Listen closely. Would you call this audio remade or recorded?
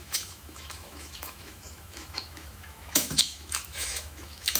remade